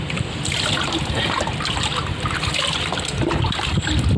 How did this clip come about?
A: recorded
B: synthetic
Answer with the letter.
A